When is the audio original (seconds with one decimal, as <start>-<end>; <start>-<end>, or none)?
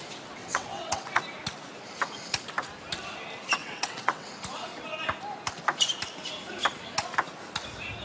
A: 0.0-0.4; 1.2-3.6; 4.3-8.0